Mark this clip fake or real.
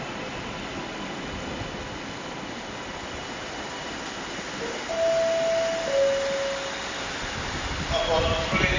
real